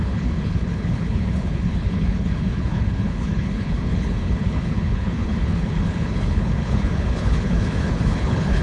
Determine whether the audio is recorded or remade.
remade